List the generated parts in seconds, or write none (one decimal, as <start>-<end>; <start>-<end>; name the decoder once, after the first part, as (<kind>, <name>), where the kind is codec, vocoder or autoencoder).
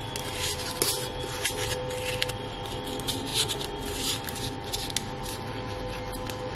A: none